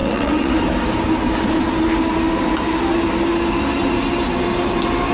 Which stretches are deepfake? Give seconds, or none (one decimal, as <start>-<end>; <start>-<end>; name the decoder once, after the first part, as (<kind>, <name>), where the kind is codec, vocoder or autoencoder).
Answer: 0.0-0.5 (vocoder, WaveNeXt)